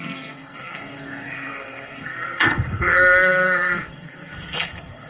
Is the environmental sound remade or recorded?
remade